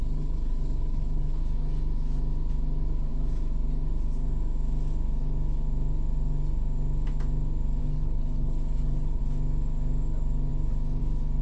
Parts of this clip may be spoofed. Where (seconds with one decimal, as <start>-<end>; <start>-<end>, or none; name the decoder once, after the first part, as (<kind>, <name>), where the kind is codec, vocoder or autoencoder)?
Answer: 0.0-1.4 (codec, HILCodec); 7.8-9.2